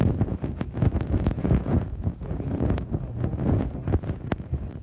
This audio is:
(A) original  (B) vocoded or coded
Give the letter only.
B